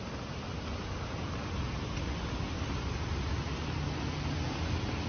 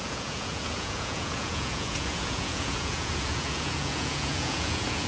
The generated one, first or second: second